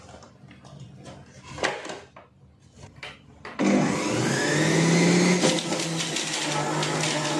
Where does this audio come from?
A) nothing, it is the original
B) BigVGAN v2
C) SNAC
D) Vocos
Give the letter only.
A